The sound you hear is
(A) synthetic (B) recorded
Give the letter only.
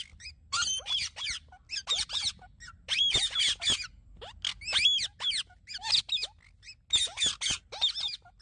B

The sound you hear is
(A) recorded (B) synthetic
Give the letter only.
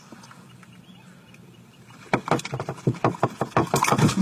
A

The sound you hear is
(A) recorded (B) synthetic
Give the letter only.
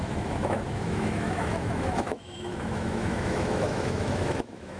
B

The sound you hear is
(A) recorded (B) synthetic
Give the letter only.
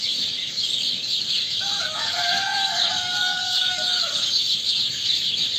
B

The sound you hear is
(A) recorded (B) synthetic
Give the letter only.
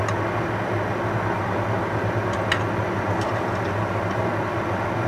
A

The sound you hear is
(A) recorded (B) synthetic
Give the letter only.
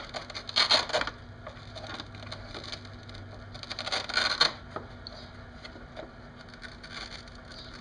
A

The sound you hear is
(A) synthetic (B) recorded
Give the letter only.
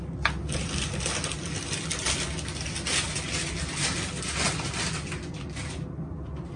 B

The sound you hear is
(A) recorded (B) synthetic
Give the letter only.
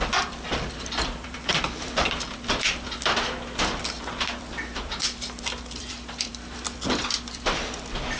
B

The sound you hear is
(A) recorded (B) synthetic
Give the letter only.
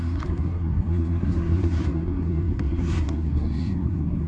B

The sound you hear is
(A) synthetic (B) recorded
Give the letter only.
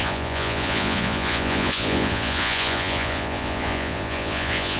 A